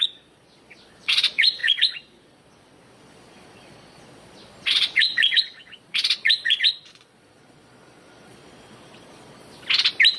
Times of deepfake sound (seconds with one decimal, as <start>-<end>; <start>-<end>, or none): 0.0-9.4